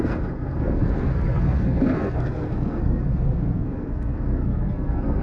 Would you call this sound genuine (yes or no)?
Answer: no